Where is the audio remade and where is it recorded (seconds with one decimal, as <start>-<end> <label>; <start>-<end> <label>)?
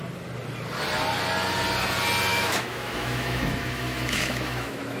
0.0-2.3 recorded; 2.3-5.0 remade